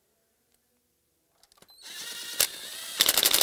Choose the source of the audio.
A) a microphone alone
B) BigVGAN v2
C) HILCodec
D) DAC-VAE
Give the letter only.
A